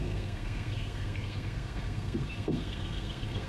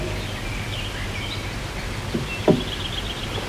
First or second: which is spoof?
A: first